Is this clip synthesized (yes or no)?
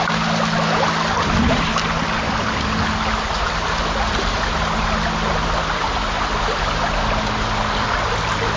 no